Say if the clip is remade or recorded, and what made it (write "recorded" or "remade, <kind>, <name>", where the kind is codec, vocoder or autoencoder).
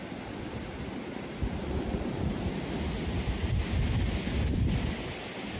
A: recorded